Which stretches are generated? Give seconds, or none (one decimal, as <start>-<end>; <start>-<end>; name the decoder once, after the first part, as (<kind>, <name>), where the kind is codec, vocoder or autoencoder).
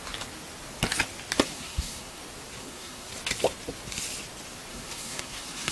1.5-2.2 (codec, SNAC); 2.6-3.1; 4.7-5.7